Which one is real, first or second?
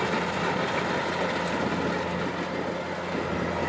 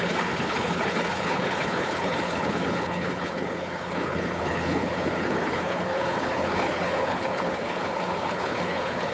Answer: first